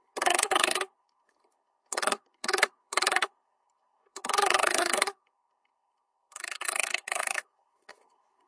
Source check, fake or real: fake